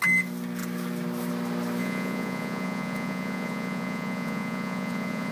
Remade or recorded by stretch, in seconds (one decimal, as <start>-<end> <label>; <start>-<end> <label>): 0.0-1.8 recorded; 1.8-5.3 remade